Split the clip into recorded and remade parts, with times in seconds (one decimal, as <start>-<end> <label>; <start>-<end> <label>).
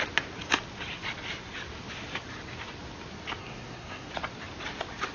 0.0-3.4 recorded; 3.4-4.1 remade; 4.1-5.1 recorded